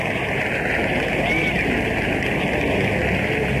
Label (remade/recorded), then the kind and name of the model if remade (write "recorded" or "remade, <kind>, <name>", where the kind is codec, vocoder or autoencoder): recorded